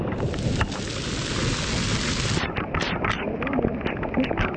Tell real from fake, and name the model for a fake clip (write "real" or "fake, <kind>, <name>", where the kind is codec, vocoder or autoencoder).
real